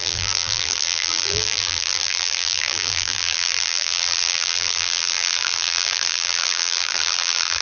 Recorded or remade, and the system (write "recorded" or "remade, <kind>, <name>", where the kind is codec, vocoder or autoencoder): remade, vocoder, BigVGAN v2